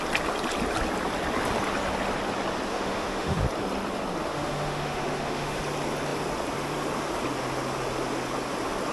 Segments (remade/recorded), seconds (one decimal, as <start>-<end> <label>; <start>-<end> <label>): 0.0-2.7 recorded; 2.7-3.4 remade; 3.4-4.2 recorded; 4.2-5.6 remade; 5.6-8.9 recorded

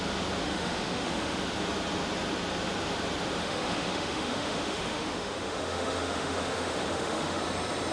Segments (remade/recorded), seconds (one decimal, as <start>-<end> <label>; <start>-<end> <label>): 0.0-0.4 recorded; 0.4-1.4 remade; 1.4-3.4 recorded; 3.4-7.4 remade; 7.4-7.9 recorded

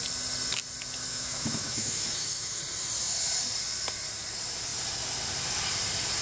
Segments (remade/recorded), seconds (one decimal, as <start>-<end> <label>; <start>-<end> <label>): 0.0-1.1 recorded; 1.1-2.6 remade; 2.6-6.2 recorded

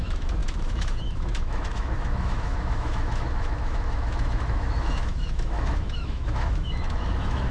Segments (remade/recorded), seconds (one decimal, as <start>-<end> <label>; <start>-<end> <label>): 0.0-7.5 remade